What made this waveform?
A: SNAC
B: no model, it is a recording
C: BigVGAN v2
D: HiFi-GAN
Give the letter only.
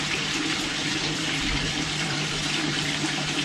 C